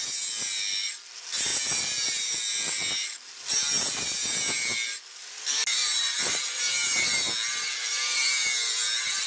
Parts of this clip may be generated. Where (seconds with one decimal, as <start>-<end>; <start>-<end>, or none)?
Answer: 5.8-6.4